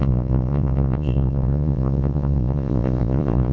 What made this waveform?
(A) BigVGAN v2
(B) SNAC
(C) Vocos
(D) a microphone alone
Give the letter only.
C